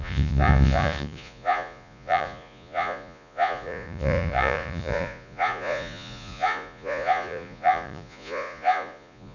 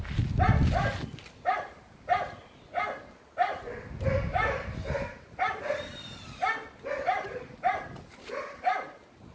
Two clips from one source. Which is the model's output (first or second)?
first